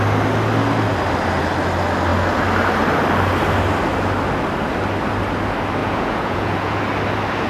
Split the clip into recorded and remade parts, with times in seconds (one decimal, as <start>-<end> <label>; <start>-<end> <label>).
0.0-5.8 recorded; 5.8-6.8 remade; 6.8-7.5 recorded

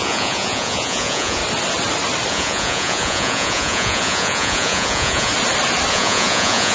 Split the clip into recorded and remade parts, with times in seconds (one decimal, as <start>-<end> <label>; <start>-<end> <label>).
0.0-1.4 remade; 1.4-2.3 recorded; 2.3-5.3 remade; 5.3-5.9 recorded; 5.9-6.7 remade

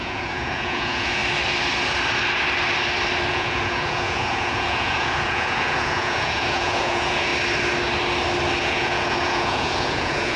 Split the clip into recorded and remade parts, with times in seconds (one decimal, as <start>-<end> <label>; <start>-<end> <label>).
0.0-1.2 remade; 1.2-3.3 recorded; 3.3-7.3 remade; 7.3-8.6 recorded; 8.6-10.4 remade

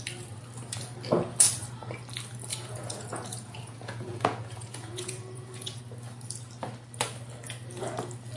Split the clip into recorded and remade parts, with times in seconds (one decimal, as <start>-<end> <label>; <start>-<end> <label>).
0.0-2.5 recorded; 2.5-5.8 remade; 5.8-8.4 recorded